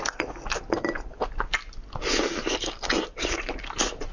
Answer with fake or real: real